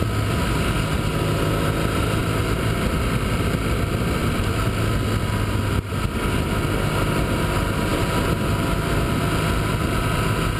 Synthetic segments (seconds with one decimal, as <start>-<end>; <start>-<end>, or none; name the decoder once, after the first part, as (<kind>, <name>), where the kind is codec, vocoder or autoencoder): none